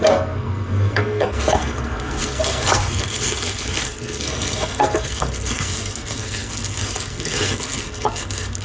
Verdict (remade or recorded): remade